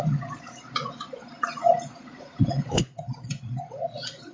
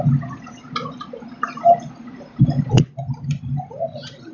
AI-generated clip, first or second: first